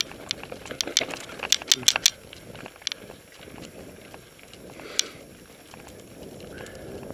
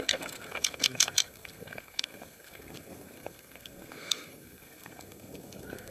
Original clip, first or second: first